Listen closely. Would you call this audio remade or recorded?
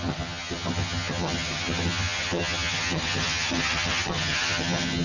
remade